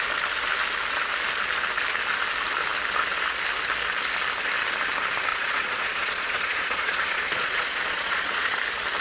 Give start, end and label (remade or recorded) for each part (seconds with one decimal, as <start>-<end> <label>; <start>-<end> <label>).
0.0-5.3 recorded; 5.3-8.6 remade; 8.6-9.0 recorded